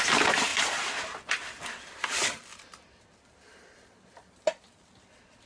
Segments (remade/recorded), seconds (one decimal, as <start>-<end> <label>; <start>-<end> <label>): 0.0-5.5 recorded